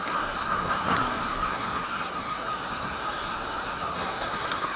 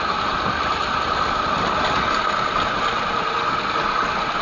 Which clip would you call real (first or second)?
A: second